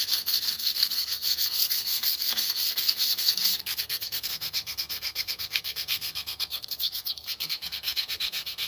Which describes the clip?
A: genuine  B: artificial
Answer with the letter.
B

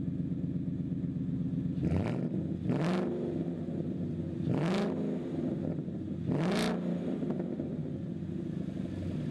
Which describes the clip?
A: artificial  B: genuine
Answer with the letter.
B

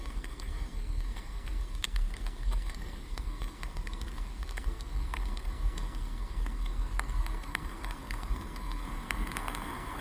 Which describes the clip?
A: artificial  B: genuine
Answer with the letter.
A